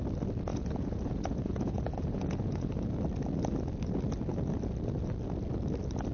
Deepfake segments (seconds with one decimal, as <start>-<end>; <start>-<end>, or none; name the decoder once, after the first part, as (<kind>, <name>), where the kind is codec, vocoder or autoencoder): 0.5-2.7 (vocoder, Vocos)